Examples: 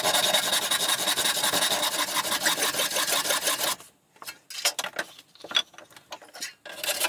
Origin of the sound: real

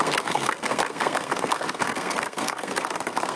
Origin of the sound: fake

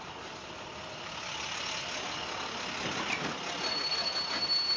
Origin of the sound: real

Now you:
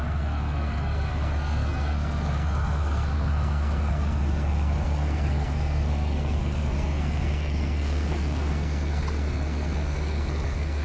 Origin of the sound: fake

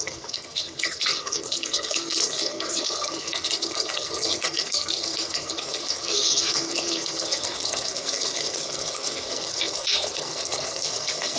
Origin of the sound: fake